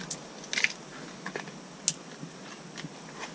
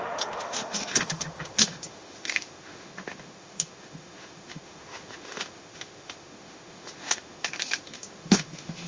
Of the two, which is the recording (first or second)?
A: first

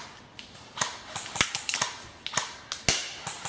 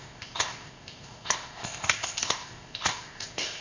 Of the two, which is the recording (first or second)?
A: first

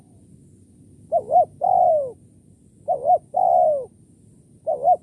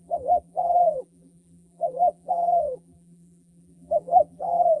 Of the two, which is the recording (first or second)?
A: first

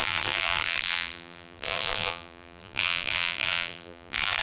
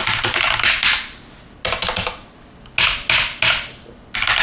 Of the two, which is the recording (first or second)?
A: second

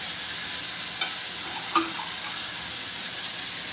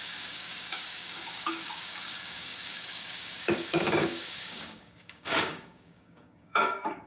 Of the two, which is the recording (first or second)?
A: first